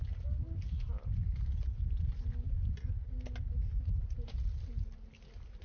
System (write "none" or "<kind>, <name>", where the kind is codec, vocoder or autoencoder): none